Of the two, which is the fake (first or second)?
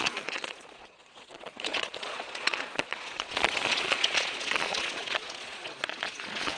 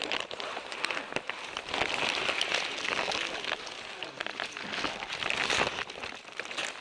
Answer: first